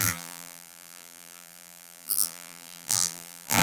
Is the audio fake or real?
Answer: fake